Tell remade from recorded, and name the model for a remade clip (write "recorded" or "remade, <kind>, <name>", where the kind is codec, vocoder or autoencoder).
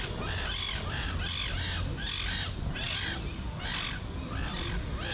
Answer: recorded